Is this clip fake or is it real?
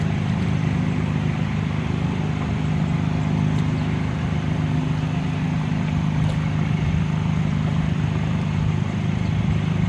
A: real